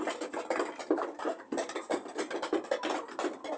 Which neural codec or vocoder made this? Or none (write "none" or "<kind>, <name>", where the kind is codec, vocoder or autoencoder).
none